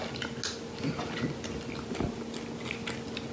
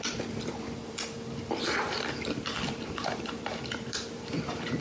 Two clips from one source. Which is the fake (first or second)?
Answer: second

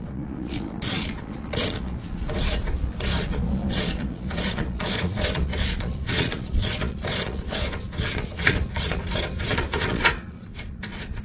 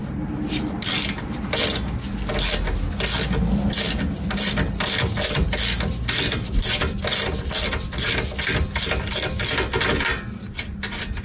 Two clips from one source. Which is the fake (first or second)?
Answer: first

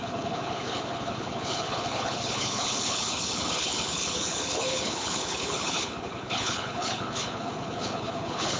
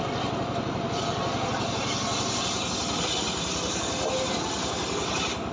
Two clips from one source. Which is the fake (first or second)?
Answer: first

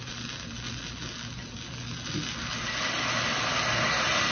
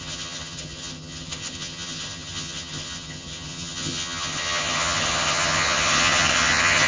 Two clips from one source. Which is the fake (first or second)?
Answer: second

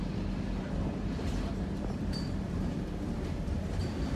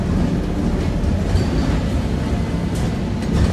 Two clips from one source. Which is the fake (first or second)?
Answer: first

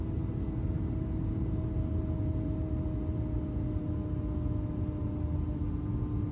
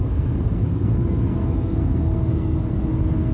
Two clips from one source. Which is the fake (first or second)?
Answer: second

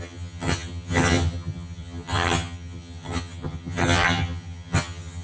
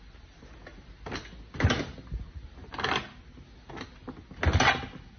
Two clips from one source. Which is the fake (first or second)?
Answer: first